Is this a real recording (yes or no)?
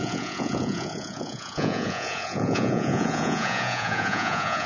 no